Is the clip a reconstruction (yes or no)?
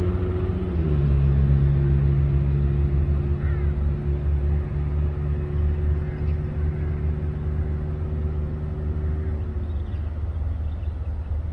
no